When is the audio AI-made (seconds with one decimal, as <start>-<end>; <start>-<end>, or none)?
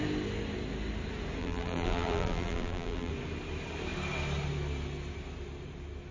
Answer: 1.4-3.1